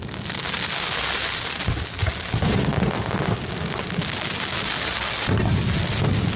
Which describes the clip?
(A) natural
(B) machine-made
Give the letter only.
A